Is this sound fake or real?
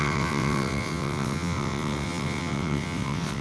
fake